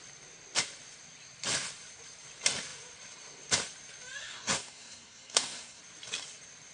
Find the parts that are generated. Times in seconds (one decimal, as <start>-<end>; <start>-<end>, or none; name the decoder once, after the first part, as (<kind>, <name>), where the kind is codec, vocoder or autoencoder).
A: 4.2-5.8 (codec, SNAC)